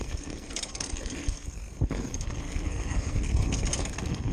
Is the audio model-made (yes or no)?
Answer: yes